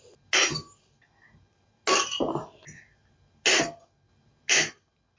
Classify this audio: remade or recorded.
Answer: recorded